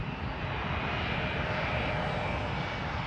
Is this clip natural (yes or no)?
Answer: yes